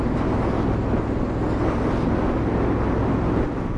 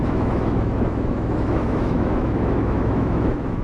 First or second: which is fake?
second